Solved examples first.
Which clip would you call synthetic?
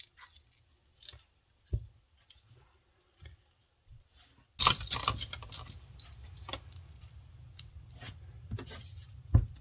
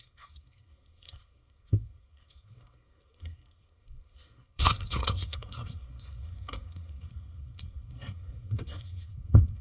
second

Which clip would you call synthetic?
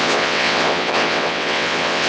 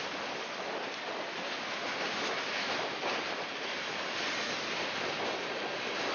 first